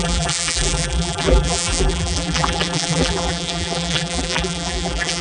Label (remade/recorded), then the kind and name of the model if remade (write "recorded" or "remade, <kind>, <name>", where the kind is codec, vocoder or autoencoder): remade, vocoder, BigVGAN v2